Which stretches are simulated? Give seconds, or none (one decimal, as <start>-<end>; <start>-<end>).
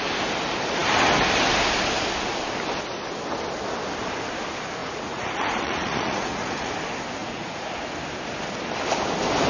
4.8-6.7; 7.2-7.7